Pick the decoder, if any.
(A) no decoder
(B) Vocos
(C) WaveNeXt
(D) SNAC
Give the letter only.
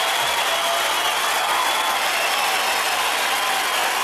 A